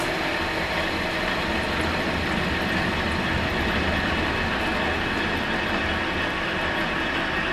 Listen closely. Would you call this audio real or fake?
real